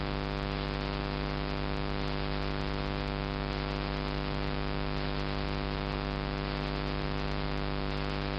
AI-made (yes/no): no